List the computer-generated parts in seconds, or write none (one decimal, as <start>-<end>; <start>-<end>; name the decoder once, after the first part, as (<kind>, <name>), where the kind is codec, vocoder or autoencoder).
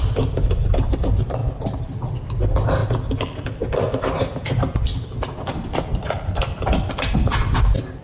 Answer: 0.0-1.4 (vocoder, BigVGAN v2); 2.4-2.8; 5.5-8.0